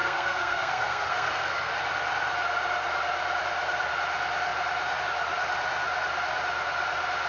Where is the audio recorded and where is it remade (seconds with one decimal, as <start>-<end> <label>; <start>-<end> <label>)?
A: 0.0-1.7 remade; 1.7-7.3 recorded